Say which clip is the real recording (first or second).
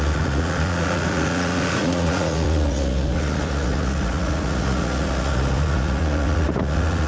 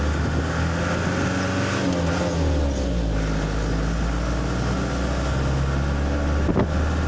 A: second